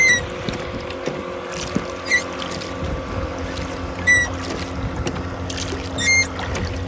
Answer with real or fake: real